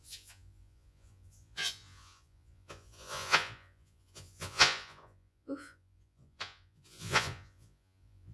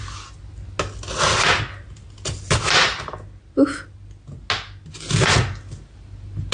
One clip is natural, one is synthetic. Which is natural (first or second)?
second